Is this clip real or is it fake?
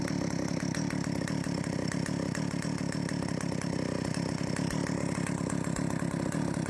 real